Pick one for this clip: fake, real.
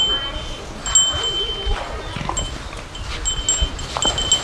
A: real